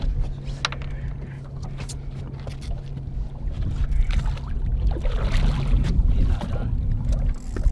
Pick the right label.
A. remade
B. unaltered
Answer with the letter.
B